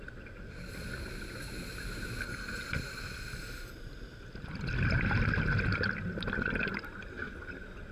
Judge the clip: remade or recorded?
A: recorded